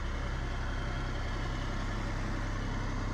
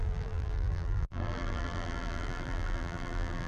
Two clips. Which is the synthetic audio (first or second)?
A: second